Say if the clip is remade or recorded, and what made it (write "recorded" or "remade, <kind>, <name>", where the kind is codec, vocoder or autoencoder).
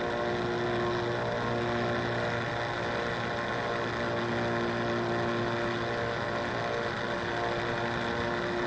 recorded